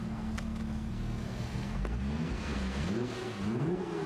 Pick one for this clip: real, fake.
fake